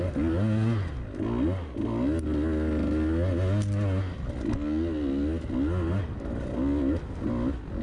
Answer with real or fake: real